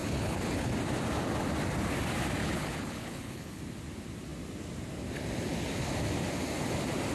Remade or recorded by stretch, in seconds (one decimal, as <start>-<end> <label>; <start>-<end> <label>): 0.0-0.7 remade; 0.7-2.4 recorded; 2.4-3.6 remade; 3.6-7.1 recorded